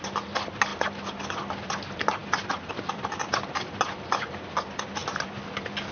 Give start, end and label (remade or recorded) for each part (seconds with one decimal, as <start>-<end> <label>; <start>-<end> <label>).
0.0-0.7 remade; 0.7-1.5 recorded; 1.5-5.9 remade